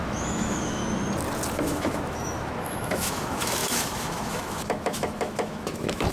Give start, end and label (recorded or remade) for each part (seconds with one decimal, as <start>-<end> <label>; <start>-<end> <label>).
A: 0.0-0.8 remade; 0.8-1.5 recorded; 1.5-6.1 remade

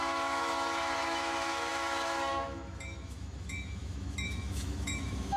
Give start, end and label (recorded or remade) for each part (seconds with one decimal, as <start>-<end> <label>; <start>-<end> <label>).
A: 0.0-5.4 remade

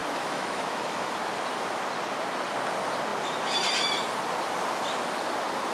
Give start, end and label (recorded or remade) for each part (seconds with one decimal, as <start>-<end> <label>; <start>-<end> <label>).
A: 0.0-1.1 remade; 1.1-5.7 recorded